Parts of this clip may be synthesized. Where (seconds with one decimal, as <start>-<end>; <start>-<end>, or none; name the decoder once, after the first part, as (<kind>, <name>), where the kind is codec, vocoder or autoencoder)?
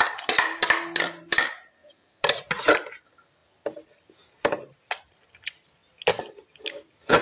1.8-2.7 (vocoder, BigVGAN v2)